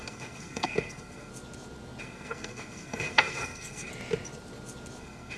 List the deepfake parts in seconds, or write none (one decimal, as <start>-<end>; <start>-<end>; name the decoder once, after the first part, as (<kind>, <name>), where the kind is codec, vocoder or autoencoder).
0.0-1.3 (codec, SNAC); 2.0-3.9; 5.0-5.4